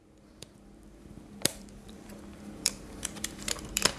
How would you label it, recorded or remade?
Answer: remade